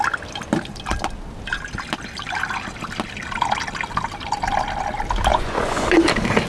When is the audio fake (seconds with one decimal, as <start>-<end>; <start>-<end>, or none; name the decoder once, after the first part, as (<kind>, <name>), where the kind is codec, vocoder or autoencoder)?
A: 5.3-5.9 (vocoder, Vocos)